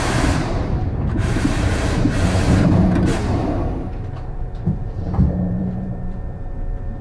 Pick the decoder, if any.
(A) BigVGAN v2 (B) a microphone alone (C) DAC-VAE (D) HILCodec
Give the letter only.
A